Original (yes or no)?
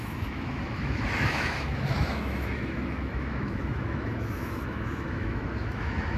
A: no